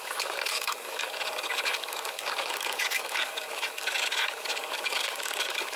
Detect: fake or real fake